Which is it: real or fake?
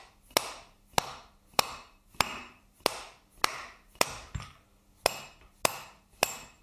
real